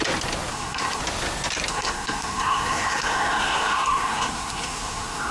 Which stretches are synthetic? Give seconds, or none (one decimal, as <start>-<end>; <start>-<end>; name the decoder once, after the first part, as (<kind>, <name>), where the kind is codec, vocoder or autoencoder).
0.5-1.0 (codec, SNAC); 1.7-5.3